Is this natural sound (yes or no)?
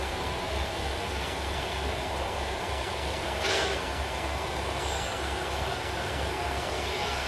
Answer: no